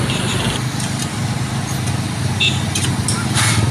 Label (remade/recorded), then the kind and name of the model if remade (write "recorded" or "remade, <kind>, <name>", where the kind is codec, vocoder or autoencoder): recorded